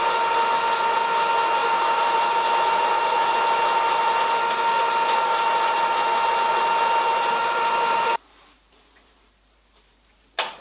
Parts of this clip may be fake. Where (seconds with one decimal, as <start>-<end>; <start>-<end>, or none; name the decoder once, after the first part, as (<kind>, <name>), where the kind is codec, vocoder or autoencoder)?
1.6-3.4 (vocoder, BigVGAN v2); 7.1-10.2